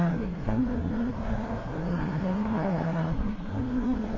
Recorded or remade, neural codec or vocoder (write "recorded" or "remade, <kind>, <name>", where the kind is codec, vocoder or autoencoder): remade, codec, SNAC